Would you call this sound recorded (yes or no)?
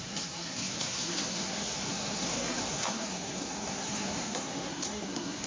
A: no